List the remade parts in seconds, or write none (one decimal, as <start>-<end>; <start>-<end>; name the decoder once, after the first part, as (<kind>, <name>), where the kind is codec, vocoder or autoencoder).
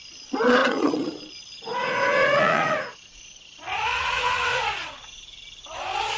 0.6-1.2 (vocoder, Vocos); 1.7-5.4